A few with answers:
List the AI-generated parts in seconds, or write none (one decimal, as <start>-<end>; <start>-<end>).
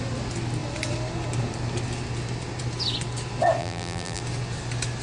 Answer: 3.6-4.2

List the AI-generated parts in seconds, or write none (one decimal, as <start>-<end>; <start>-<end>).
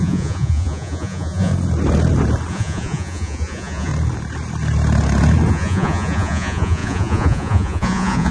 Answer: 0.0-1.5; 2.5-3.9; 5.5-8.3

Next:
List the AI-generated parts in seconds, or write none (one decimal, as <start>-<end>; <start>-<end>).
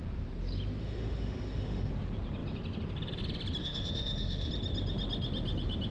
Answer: 0.8-1.9; 3.6-4.5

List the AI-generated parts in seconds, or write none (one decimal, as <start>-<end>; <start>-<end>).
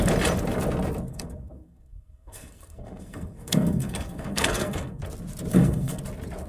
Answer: 1.1-5.0; 5.5-6.0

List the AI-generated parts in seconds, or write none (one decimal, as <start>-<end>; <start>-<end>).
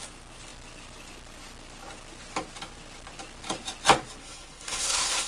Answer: 4.2-5.3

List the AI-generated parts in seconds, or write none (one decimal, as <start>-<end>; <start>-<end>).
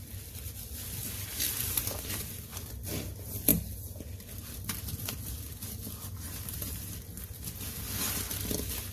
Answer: none